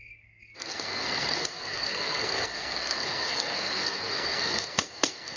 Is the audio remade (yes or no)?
yes